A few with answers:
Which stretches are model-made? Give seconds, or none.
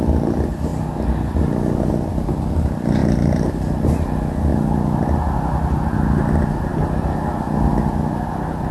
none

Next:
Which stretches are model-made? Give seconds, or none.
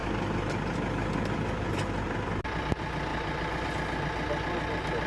3.1-3.7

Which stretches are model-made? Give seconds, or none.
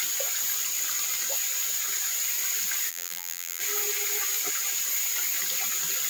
2.9-3.6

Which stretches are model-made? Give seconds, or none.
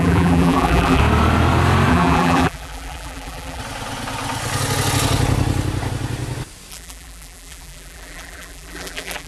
0.0-1.0; 1.9-3.6; 6.7-9.3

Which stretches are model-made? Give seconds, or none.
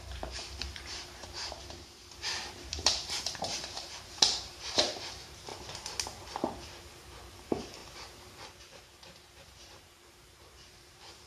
0.0-5.5; 6.8-11.3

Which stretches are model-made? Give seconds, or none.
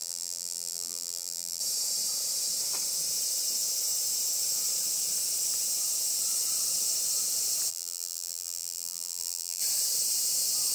0.0-1.6; 7.7-9.6